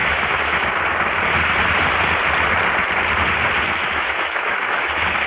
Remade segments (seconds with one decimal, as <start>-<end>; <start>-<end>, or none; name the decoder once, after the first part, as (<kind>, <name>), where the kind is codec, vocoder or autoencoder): 0.0-0.7 (autoencoder, DAC-VAE); 3.8-5.3